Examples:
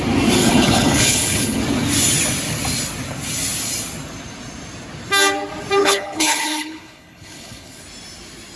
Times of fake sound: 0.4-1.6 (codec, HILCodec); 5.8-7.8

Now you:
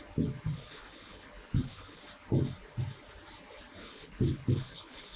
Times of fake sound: 0.5-2.0 (codec, HILCodec); 3.8-5.2

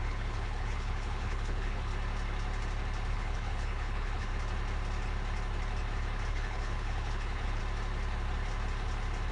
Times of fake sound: 0.0-1.9 (codec, HILCodec); 3.1-4.3; 6.3-7.6

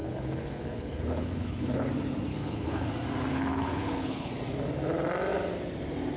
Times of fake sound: 0.0-1.9 (codec, HILCodec); 2.3-2.9; 3.3-4.3

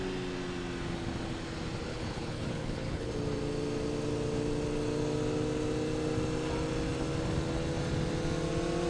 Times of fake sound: 1.9-3.1 (codec, HILCodec)